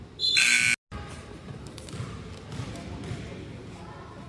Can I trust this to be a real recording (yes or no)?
yes